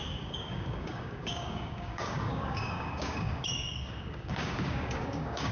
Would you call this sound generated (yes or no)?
yes